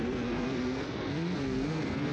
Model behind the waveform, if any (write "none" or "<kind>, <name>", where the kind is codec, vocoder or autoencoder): codec, SNAC